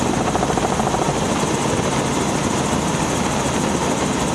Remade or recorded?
recorded